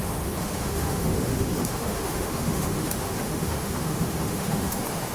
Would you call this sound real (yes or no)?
no